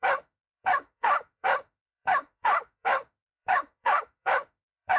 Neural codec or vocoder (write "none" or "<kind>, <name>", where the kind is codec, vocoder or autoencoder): autoencoder, DAC-VAE